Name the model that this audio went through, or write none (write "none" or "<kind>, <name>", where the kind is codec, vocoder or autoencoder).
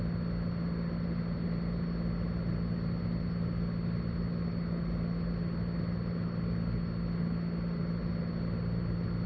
none